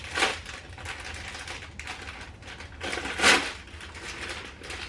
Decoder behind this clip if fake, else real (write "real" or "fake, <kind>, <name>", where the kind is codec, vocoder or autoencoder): real